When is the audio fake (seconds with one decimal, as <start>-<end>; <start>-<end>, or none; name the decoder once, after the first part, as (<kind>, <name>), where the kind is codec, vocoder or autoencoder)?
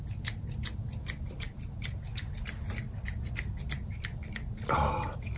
none